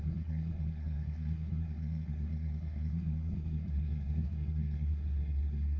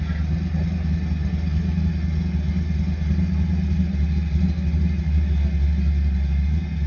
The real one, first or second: second